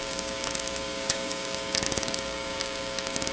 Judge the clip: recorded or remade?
remade